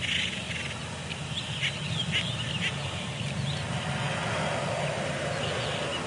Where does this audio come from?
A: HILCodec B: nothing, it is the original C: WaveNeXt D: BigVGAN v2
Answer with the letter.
B